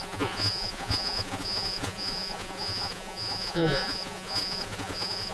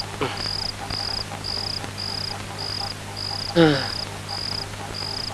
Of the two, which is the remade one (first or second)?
first